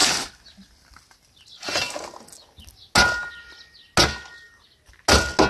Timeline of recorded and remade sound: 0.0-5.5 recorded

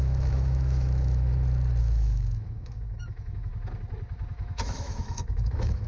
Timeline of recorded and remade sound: 0.0-1.3 remade; 1.3-1.8 recorded; 1.8-3.5 remade; 3.5-4.3 recorded; 4.3-5.9 remade

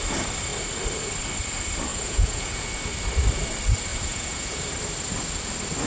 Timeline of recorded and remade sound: 0.0-1.9 recorded; 1.9-2.7 remade; 2.7-3.9 recorded; 3.9-4.6 remade; 4.6-5.9 recorded

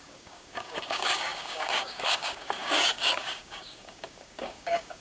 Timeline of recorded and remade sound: 0.0-5.0 remade

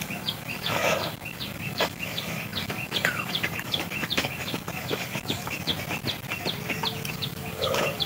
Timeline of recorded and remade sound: 0.0-5.7 remade; 5.7-7.1 recorded; 7.1-8.1 remade

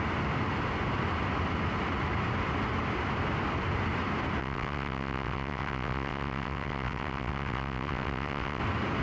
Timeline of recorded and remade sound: 0.0-4.4 recorded; 4.4-8.6 remade; 8.6-9.0 recorded

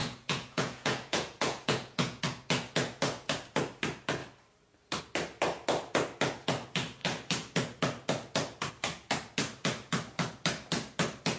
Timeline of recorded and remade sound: 0.0-2.2 remade; 2.2-11.4 recorded

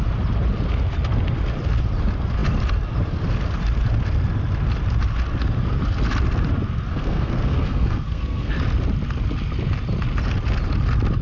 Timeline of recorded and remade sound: 0.0-6.9 recorded; 6.9-8.5 remade; 8.5-11.2 recorded